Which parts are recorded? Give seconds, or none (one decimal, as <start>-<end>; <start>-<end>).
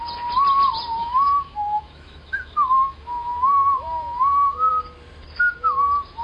0.0-1.0; 4.7-6.2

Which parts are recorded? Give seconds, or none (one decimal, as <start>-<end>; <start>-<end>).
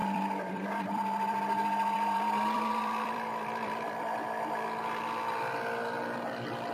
4.0-6.7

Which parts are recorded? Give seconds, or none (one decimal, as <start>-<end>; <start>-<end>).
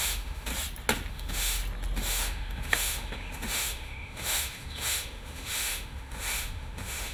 0.5-1.1; 1.6-2.1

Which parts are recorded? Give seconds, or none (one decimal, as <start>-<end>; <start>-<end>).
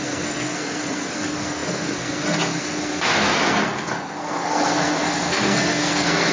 none